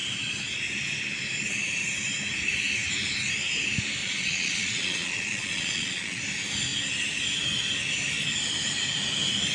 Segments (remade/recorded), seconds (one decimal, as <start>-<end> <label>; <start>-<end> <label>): 0.0-4.0 recorded; 4.0-6.2 remade; 6.2-9.5 recorded